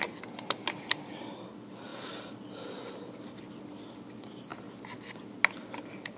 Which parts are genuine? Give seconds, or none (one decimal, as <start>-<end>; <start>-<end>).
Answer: 0.0-6.2